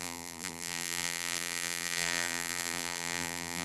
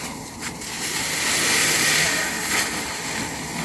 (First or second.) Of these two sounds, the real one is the second